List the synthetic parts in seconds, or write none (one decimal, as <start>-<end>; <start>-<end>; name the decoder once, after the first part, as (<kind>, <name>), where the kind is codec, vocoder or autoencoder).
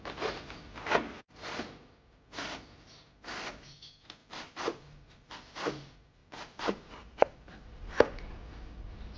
4.2-5.3 (vocoder, BigVGAN v2); 6.2-7.7